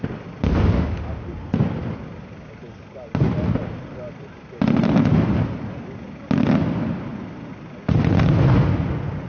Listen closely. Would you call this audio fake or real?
real